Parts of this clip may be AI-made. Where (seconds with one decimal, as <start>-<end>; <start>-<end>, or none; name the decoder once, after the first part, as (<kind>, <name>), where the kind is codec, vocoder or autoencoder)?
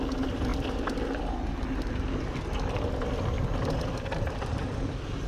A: none